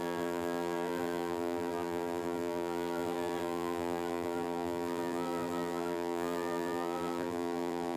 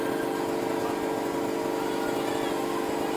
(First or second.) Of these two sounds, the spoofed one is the first